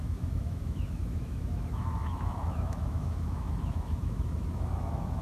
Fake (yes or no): yes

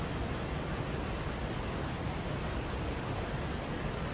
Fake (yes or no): no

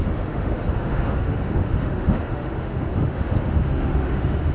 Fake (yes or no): yes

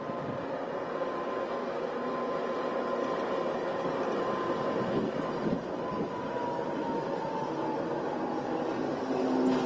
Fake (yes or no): no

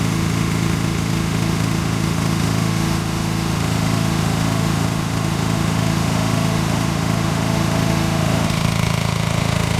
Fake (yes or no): yes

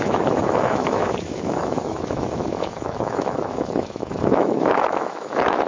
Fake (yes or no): yes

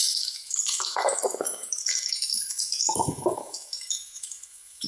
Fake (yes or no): yes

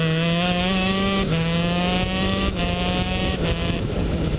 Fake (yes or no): yes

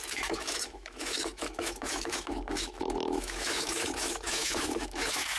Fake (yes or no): yes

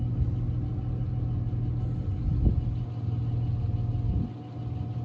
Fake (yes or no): no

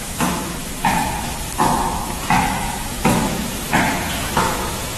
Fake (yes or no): yes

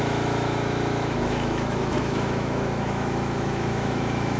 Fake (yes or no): yes